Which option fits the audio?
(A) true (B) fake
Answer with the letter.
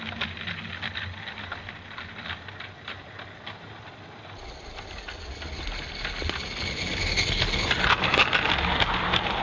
A